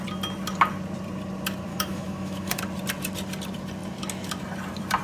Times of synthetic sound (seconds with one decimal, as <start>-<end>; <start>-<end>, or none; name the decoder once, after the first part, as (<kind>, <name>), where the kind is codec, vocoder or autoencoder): 1.7-2.6 (autoencoder, DAC-VAE)